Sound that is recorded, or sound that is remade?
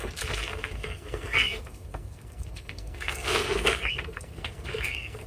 remade